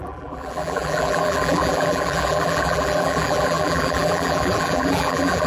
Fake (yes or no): yes